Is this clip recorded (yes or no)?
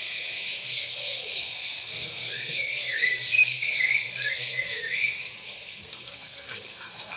no